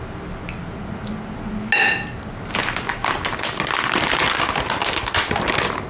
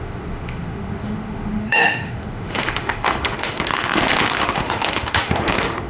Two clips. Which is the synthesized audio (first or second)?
second